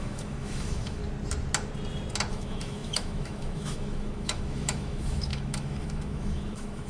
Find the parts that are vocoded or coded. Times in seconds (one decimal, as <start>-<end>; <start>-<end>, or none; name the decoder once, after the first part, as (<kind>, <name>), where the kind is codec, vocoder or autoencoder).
0.0-1.0 (autoencoder, DAC-VAE); 2.3-6.9